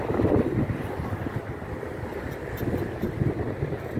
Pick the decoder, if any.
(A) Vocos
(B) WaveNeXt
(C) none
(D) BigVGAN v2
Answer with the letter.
C